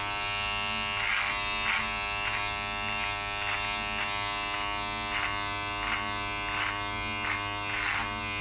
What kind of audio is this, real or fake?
real